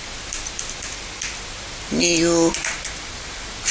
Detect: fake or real real